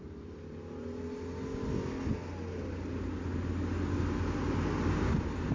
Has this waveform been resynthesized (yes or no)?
no